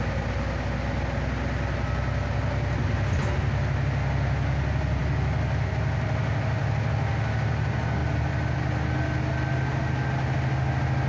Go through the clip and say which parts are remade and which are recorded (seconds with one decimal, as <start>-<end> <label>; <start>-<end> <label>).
0.0-11.1 recorded